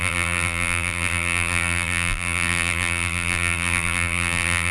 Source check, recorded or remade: remade